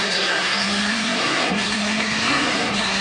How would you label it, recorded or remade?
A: remade